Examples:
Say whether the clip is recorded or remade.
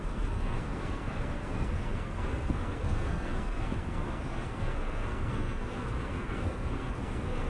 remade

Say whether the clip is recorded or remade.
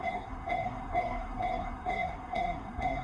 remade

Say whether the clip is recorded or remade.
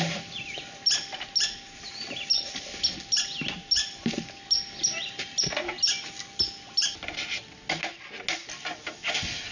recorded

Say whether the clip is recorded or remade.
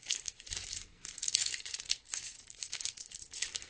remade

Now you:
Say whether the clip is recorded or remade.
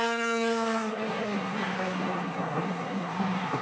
remade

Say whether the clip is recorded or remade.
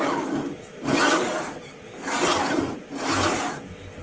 recorded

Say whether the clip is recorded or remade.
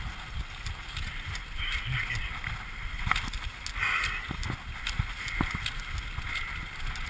recorded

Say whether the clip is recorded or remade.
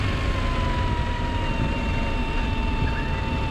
recorded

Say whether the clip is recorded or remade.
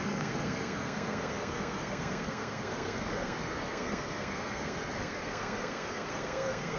remade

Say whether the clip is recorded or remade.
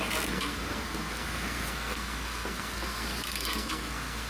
remade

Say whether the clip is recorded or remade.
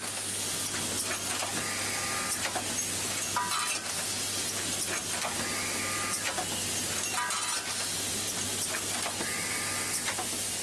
recorded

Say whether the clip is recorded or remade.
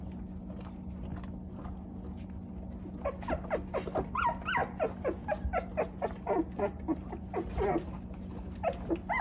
recorded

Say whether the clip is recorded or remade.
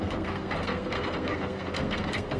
remade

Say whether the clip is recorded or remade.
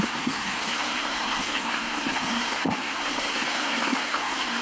remade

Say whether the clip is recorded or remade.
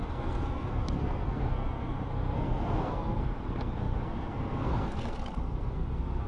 remade